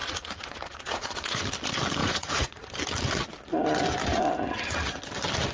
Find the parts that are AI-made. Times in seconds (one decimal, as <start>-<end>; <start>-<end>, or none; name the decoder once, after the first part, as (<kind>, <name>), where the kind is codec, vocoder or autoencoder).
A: 0.0-1.4 (vocoder, Vocos); 2.0-2.7